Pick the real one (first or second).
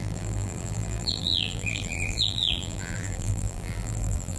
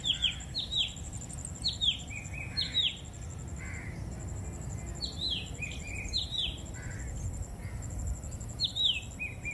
second